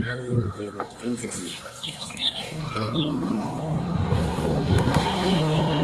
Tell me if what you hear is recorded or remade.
remade